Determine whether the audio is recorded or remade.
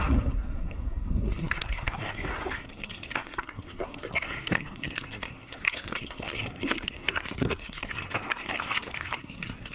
remade